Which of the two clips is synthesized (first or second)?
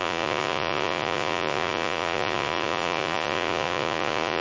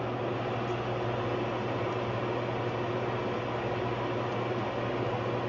first